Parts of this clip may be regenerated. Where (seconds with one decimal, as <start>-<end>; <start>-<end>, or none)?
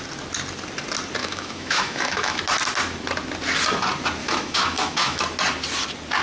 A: 1.2-2.4; 4.2-5.2